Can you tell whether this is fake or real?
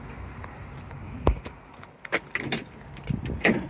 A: real